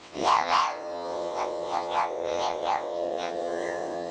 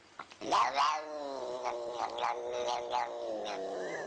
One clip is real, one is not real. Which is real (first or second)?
second